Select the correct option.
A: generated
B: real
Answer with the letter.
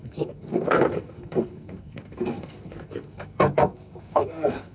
A